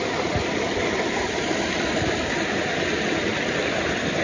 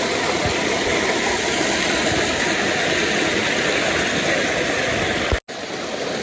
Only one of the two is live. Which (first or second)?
second